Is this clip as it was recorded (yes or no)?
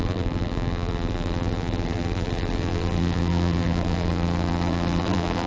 no